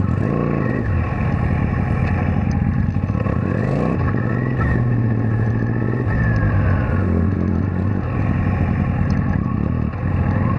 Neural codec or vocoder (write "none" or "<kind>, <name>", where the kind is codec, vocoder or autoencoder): none